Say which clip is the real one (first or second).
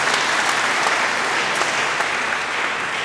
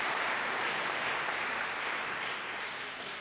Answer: first